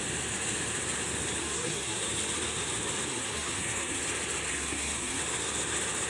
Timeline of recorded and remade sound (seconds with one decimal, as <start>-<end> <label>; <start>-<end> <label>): 0.0-1.4 recorded; 1.4-2.1 remade; 2.1-3.1 recorded; 3.1-4.0 remade; 4.0-4.5 recorded; 4.5-5.2 remade; 5.2-6.1 recorded